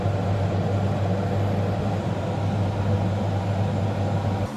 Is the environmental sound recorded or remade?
recorded